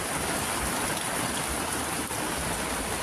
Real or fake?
real